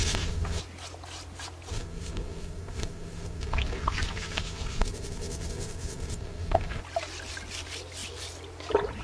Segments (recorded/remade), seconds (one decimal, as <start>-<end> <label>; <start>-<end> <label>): 0.0-0.6 remade; 0.6-1.7 recorded; 1.7-6.8 remade; 6.8-9.0 recorded